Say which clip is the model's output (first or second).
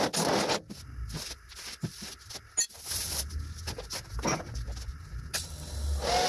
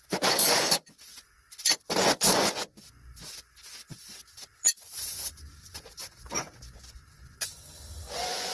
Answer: second